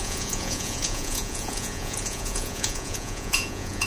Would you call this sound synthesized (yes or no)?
yes